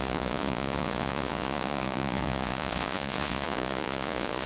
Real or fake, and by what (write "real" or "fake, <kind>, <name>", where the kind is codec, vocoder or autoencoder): fake, vocoder, Vocos